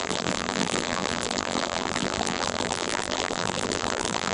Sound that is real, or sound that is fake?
fake